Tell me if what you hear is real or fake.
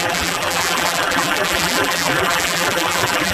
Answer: fake